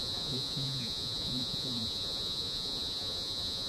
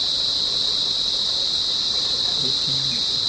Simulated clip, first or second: first